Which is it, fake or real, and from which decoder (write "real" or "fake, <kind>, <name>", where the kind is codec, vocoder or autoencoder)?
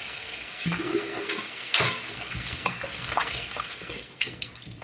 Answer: fake, codec, SNAC